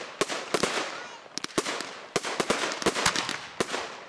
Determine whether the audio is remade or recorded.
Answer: recorded